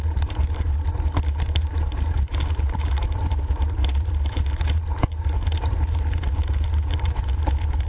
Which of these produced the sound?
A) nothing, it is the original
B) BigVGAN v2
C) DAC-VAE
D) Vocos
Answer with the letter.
B